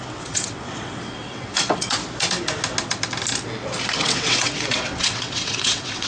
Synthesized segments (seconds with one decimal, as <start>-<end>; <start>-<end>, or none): 0.0-2.0; 4.0-6.1